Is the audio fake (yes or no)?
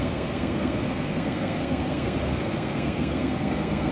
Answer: yes